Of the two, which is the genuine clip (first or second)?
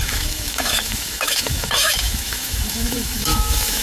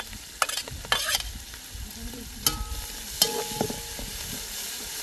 second